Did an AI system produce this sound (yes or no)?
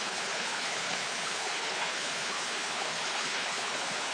yes